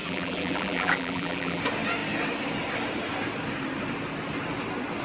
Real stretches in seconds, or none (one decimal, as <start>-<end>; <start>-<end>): 1.6-5.0